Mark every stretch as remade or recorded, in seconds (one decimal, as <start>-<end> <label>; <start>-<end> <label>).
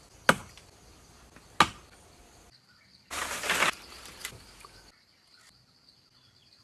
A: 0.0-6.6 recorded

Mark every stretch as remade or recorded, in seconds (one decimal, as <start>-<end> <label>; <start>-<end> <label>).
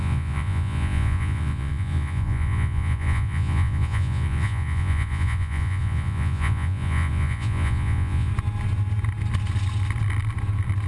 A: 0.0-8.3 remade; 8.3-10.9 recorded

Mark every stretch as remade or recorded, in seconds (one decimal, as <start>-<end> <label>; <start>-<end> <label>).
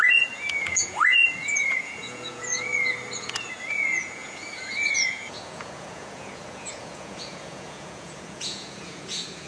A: 0.0-2.7 remade; 2.7-3.2 recorded; 3.2-9.5 remade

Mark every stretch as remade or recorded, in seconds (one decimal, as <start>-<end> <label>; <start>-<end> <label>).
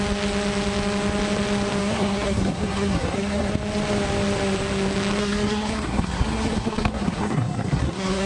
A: 0.0-1.8 recorded; 1.8-3.5 remade; 3.5-5.2 recorded; 5.2-8.3 remade